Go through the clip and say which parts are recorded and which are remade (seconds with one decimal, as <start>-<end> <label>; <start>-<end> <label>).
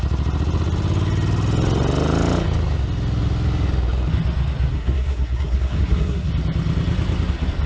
0.0-4.7 recorded; 4.7-6.3 remade; 6.3-7.7 recorded